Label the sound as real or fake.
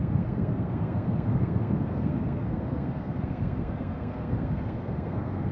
fake